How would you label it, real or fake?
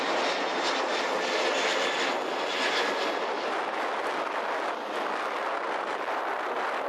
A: real